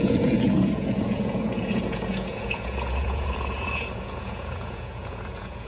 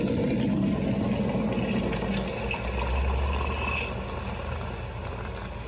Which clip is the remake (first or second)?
first